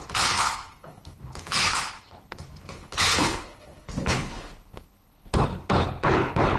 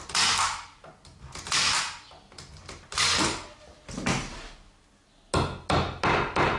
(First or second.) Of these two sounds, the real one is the second